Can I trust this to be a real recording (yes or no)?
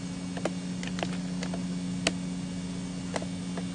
yes